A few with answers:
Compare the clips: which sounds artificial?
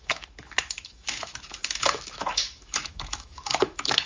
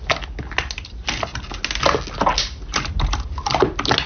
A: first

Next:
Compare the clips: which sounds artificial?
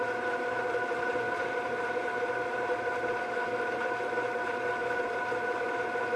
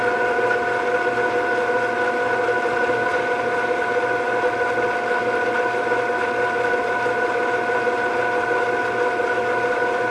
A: first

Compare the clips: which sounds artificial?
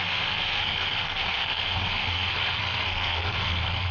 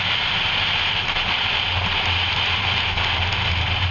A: first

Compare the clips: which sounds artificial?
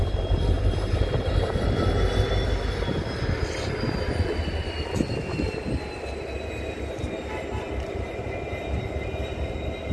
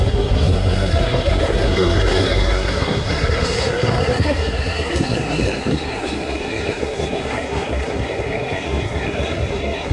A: second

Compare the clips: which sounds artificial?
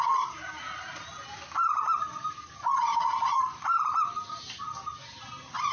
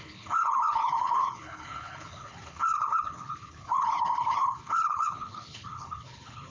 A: second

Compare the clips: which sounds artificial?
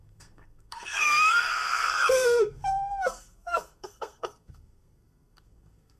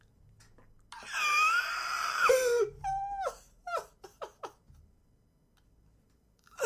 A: first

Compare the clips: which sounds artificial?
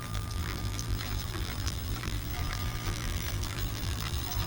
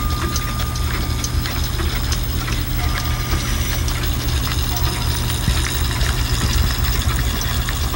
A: first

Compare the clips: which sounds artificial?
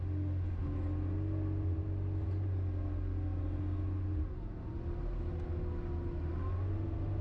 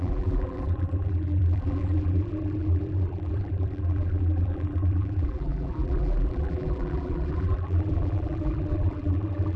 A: second